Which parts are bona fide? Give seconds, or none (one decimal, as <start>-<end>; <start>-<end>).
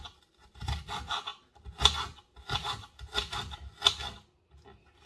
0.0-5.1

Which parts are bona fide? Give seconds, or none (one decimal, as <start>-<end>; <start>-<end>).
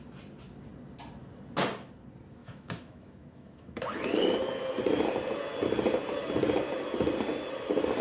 0.0-2.4; 3.8-8.0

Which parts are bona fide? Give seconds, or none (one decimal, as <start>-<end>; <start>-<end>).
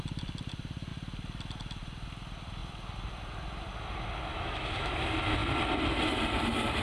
0.0-4.3; 4.9-6.8